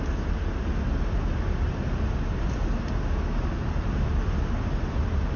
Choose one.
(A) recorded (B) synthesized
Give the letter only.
A